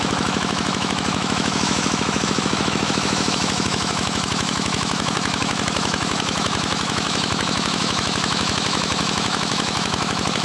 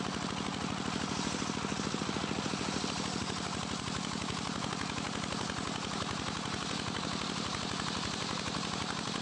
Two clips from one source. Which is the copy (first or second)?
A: first